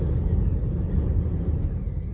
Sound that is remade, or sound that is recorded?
recorded